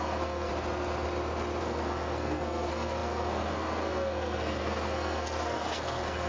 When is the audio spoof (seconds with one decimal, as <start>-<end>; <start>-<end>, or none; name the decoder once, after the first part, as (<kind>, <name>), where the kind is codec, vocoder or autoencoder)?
0.0-0.5 (codec, SNAC); 1.6-6.3